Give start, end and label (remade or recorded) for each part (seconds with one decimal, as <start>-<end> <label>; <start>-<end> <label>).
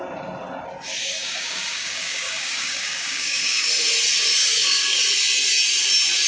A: 0.0-1.0 recorded; 1.0-3.7 remade; 3.7-4.4 recorded; 4.4-5.0 remade; 5.0-6.3 recorded